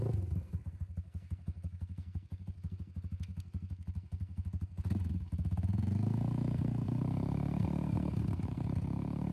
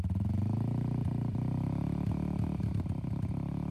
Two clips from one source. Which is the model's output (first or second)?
first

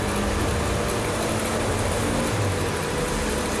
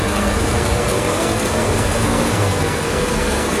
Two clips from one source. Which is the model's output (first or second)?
second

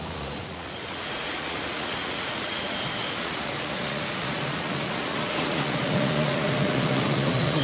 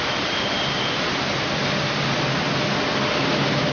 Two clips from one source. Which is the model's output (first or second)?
first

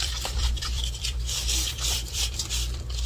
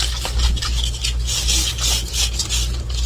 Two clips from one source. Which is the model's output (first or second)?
first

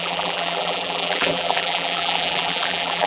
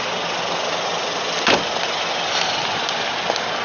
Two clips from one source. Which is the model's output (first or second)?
first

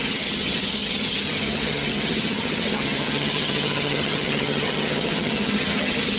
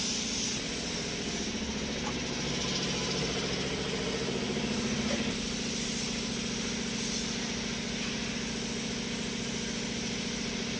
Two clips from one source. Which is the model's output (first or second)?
first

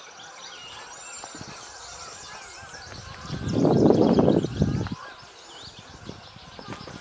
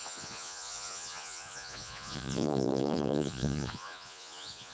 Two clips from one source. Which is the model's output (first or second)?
second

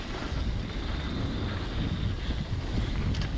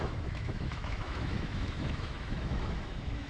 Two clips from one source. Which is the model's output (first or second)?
second